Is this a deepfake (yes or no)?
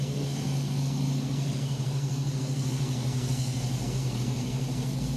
yes